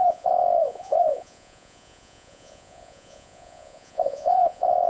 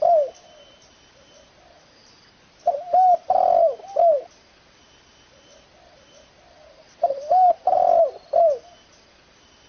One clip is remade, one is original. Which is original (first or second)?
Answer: second